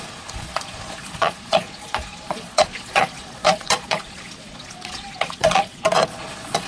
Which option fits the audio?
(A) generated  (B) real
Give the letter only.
A